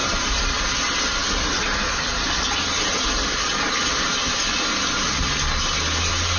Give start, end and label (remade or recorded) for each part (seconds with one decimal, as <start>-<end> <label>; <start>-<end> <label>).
0.0-6.4 recorded